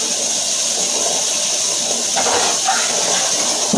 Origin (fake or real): real